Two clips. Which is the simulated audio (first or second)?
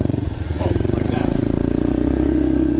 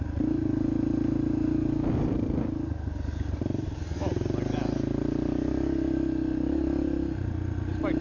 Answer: first